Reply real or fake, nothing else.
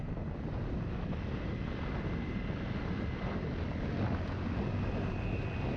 real